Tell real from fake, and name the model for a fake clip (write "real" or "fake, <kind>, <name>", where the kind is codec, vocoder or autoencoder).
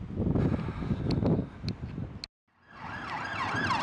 real